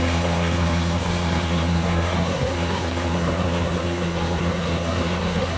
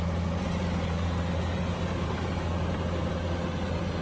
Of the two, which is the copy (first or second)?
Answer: first